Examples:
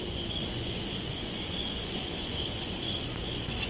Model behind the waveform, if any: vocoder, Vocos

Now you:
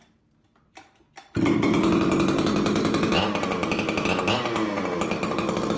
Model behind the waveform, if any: none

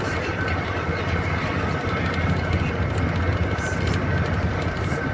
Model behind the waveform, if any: none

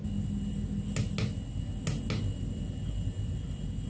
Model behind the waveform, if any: none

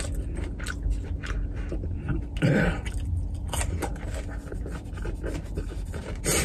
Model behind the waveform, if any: none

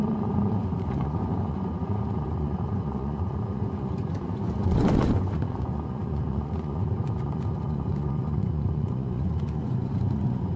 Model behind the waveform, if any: vocoder, Vocos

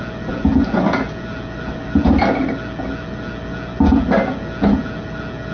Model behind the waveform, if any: none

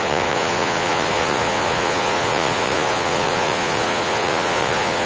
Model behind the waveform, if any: vocoder, Vocos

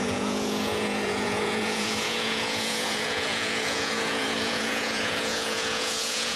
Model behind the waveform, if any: vocoder, Vocos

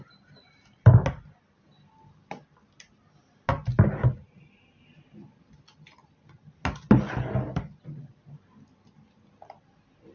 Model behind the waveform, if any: none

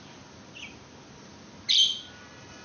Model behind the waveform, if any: none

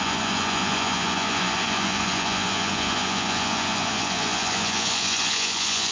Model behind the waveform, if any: vocoder, Vocos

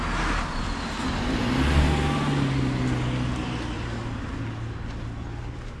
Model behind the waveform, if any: none